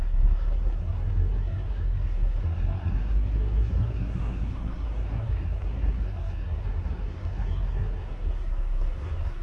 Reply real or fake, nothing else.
fake